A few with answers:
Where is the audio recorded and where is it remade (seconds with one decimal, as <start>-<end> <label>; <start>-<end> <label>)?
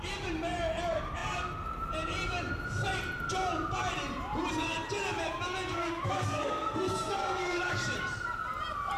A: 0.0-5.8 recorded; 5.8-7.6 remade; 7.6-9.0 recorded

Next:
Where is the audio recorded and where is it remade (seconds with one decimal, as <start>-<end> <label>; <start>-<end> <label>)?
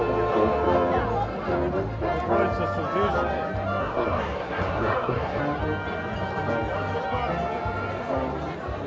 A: 0.0-3.8 recorded; 3.8-5.4 remade; 5.4-8.9 recorded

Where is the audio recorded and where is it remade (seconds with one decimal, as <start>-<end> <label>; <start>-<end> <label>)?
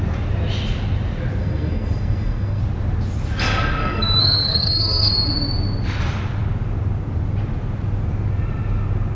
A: 0.0-1.4 recorded; 1.4-2.6 remade; 2.6-3.8 recorded; 3.8-5.1 remade; 5.1-9.2 recorded